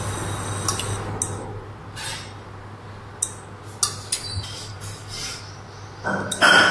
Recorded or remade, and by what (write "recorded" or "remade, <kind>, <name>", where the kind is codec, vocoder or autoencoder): recorded